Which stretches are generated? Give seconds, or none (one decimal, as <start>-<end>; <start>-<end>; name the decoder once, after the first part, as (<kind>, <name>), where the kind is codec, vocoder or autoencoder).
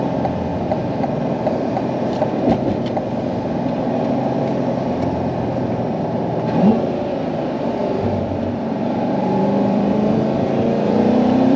0.0-11.6 (vocoder, BigVGAN v2)